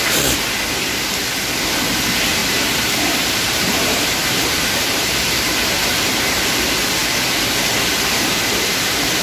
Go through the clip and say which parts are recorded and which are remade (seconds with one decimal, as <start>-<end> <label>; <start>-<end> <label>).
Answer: 0.0-2.4 recorded; 2.4-5.5 remade; 5.5-9.2 recorded